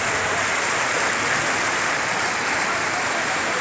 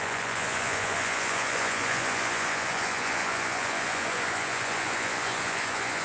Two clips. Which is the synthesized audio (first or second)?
second